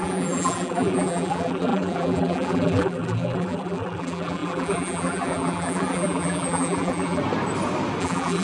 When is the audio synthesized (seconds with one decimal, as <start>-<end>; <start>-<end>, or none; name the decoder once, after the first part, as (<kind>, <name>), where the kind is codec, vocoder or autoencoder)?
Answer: 0.0-7.2 (vocoder, BigVGAN v2); 8.0-8.4